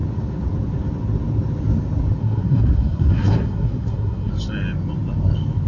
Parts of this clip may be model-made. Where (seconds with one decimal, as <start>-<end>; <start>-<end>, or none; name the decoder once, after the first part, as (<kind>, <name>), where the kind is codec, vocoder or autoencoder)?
2.2-4.3 (codec, SNAC)